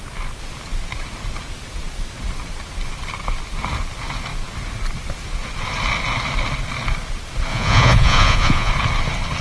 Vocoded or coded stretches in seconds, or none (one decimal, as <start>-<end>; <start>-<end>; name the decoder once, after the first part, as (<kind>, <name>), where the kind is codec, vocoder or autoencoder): 7.5-8.7 (vocoder, Vocos)